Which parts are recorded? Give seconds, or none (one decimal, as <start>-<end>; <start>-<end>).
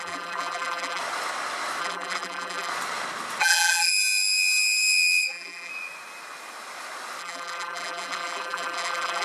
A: 1.0-1.8; 2.7-3.4; 3.9-5.3; 5.7-7.2